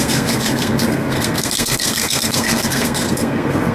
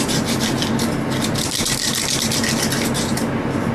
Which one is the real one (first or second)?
second